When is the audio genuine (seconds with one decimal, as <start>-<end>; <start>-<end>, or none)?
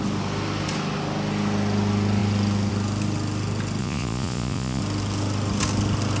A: 0.0-3.8; 4.8-6.2